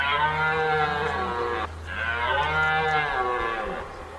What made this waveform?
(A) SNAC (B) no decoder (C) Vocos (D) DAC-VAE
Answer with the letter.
B